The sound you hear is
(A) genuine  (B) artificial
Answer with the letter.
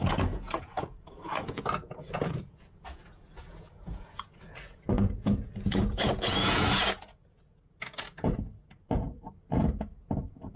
B